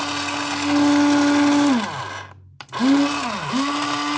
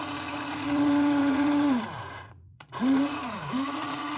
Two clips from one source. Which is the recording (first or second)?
first